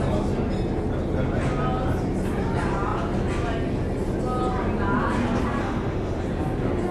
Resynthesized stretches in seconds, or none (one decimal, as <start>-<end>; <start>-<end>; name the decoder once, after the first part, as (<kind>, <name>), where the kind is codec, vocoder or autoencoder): 5.6-6.2 (autoencoder, DAC-VAE)